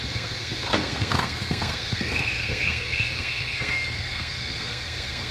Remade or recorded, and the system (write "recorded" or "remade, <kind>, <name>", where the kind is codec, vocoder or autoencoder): remade, codec, SNAC